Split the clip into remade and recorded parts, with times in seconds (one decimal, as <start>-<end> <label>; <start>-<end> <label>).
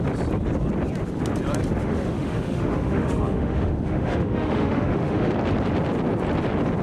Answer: 0.0-1.8 recorded; 1.8-5.3 remade; 5.3-6.8 recorded